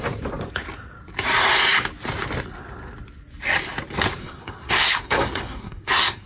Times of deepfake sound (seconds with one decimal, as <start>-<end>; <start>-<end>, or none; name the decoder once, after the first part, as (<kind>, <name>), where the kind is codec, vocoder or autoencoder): 4.2-6.3 (codec, SNAC)